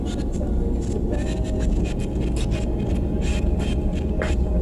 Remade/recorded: recorded